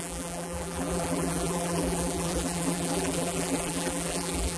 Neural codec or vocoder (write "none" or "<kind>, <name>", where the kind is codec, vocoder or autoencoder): vocoder, BigVGAN v2